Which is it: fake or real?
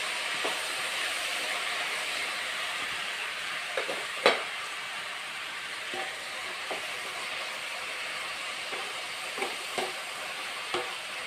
fake